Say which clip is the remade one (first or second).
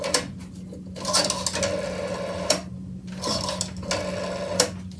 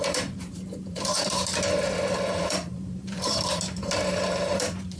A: second